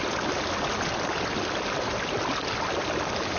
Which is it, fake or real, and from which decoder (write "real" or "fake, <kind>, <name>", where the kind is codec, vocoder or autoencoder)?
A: real